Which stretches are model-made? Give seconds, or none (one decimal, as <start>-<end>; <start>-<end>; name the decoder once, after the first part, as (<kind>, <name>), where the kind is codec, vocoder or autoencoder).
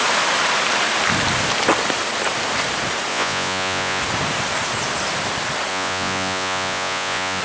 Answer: 3.1-4.0 (vocoder, Vocos); 5.7-7.4